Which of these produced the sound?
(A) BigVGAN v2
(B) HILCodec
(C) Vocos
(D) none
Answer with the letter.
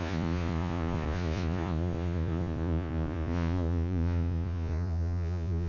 C